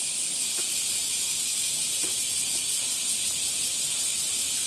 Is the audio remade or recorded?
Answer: recorded